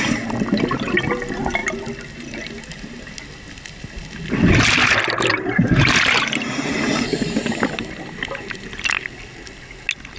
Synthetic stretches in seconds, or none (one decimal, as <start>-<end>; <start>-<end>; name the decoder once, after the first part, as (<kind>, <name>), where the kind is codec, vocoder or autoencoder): 5.3-6.6 (vocoder, BigVGAN v2)